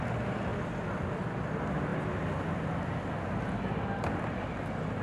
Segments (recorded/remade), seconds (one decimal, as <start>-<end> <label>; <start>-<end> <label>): 0.0-5.0 recorded